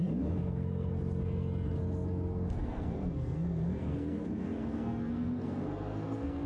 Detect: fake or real fake